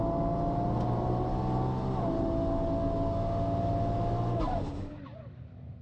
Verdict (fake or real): real